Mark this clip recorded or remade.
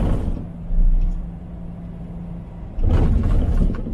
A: recorded